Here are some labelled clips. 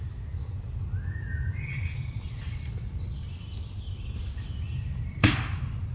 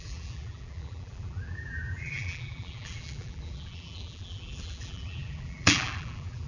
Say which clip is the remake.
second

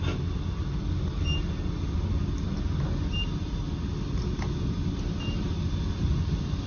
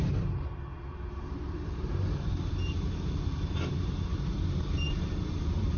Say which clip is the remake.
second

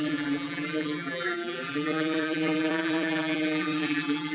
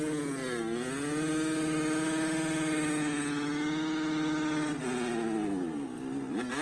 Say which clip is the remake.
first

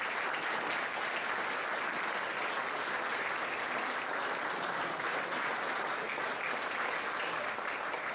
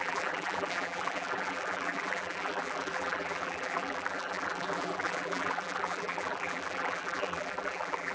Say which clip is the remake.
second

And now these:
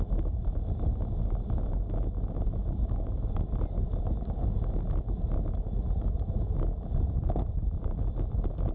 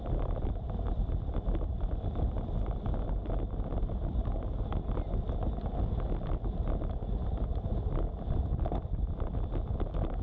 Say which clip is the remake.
second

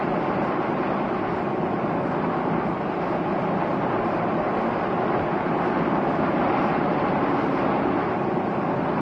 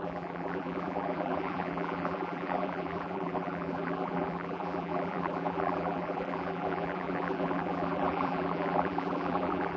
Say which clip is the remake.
second